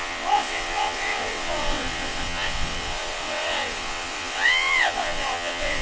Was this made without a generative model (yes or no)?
no